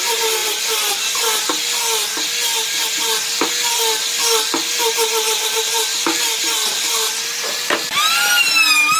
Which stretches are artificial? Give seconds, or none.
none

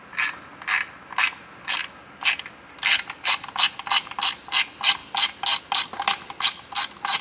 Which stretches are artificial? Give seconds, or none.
none

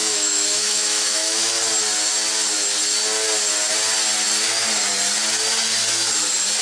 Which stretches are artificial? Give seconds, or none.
0.0-1.5

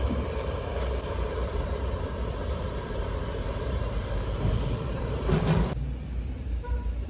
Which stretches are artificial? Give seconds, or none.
0.0-7.1

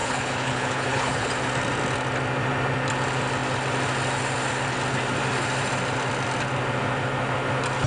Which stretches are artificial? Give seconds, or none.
0.0-1.3

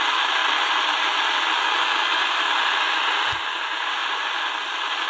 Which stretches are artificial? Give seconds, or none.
none

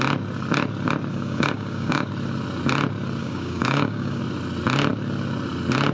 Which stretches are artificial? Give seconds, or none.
1.1-2.1; 3.2-4.2

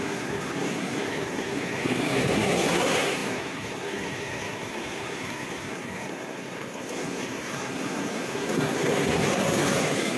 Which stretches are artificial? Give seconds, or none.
0.0-10.2